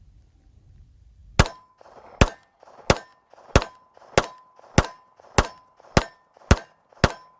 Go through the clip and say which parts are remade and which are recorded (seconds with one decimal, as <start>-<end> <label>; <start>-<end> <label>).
0.0-7.4 recorded